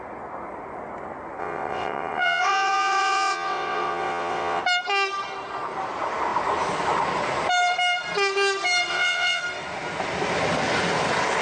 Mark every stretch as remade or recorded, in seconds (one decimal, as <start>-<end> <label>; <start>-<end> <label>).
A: 0.0-1.4 recorded; 1.4-4.6 remade; 4.6-8.9 recorded; 8.9-9.4 remade; 9.4-11.4 recorded